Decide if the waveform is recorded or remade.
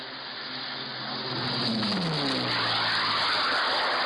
recorded